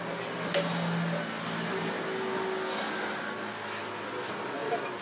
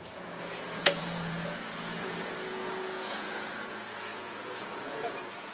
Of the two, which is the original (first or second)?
first